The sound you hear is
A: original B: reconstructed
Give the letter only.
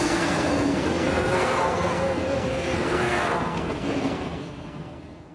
B